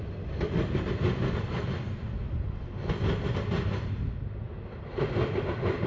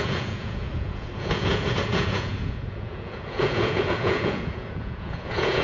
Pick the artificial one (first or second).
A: second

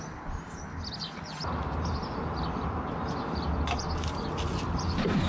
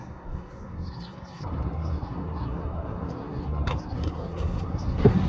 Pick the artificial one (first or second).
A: second